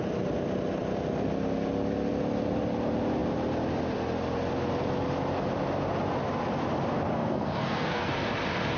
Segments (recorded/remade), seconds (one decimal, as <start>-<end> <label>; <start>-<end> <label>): 0.0-7.2 recorded; 7.2-8.1 remade; 8.1-8.8 recorded